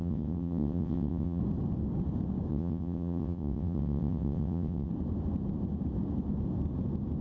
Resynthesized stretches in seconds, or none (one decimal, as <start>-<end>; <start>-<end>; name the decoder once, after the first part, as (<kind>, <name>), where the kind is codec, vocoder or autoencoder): 0.0-1.4 (vocoder, WaveNeXt); 2.5-4.9